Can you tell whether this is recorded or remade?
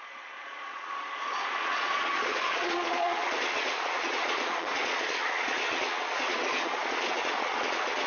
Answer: remade